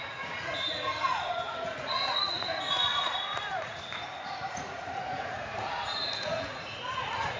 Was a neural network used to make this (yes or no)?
yes